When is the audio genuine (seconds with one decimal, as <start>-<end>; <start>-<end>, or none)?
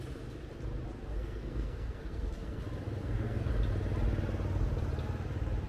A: 0.0-1.1; 2.6-3.0; 3.5-5.7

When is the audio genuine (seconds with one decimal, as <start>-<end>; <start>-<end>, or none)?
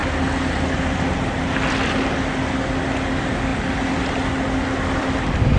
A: 0.0-5.6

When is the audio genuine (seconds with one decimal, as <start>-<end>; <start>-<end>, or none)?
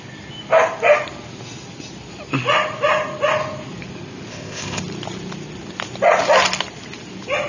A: 0.0-4.3; 4.8-7.5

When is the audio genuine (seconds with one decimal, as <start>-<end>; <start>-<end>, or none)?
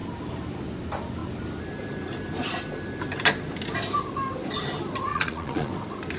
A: 0.0-5.1; 5.7-6.2